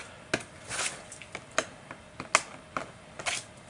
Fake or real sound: real